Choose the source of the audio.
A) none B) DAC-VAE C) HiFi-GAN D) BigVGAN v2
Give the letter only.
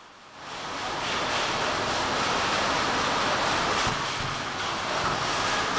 A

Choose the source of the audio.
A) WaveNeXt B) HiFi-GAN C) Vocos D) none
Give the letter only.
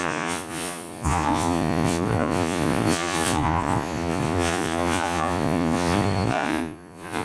C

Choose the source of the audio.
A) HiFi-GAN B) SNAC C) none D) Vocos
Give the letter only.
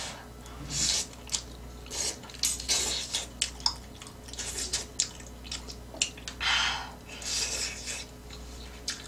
C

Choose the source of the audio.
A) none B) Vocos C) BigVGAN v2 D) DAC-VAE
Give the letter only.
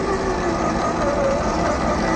A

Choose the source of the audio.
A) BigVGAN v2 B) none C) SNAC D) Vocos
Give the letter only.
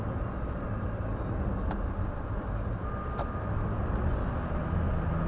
B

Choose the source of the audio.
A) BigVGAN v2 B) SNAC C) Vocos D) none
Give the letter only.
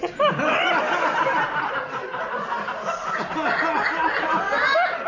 D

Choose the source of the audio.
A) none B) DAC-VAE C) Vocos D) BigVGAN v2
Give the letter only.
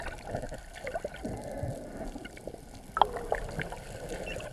A